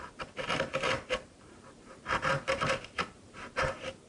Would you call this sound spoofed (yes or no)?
yes